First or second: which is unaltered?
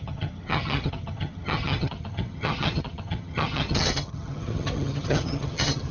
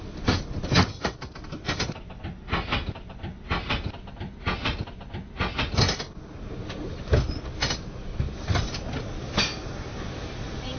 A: second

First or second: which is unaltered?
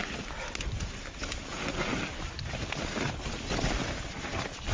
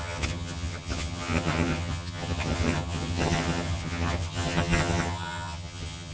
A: first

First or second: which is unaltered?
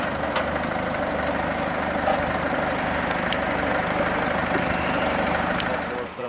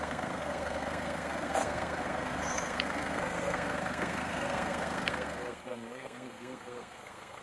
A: first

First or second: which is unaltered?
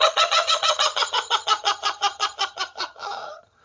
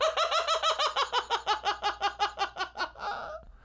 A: second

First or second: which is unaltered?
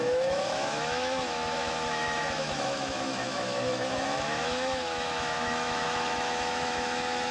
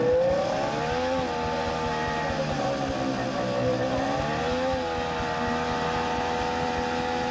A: second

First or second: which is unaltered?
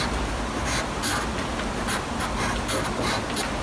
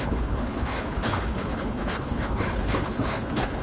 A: first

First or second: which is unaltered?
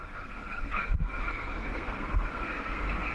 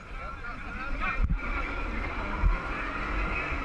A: second